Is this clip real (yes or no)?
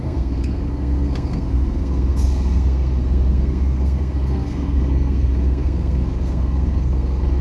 no